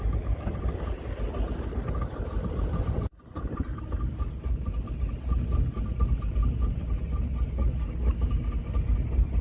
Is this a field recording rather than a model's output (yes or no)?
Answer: yes